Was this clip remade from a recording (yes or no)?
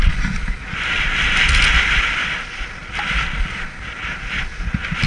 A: no